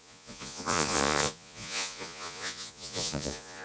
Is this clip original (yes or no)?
no